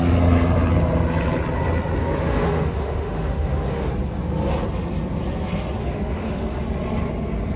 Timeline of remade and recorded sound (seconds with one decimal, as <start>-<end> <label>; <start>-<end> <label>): 0.0-2.0 recorded; 2.0-3.9 remade; 3.9-5.8 recorded; 5.8-6.6 remade; 6.6-7.6 recorded